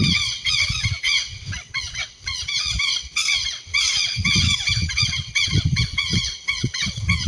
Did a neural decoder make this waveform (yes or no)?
yes